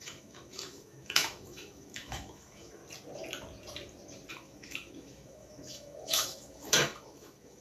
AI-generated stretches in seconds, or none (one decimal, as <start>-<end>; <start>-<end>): 0.0-2.8; 4.3-7.6